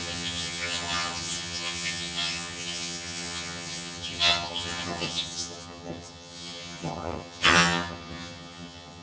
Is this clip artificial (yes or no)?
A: yes